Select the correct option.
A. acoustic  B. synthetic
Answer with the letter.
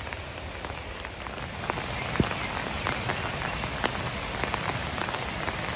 A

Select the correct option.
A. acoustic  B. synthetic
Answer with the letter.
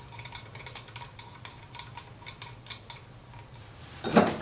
A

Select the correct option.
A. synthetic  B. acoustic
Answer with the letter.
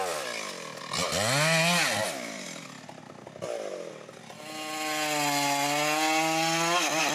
B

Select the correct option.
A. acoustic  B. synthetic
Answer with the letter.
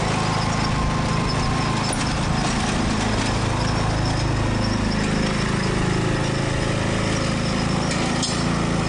A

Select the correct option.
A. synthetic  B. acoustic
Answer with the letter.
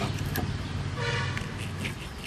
B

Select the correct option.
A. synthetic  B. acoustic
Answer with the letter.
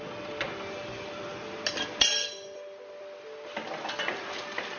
B